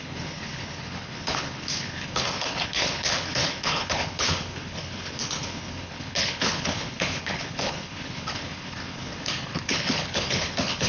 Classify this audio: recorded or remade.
remade